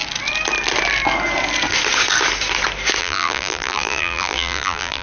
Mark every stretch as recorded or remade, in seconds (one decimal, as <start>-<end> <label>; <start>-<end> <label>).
0.0-3.0 recorded; 3.0-5.0 remade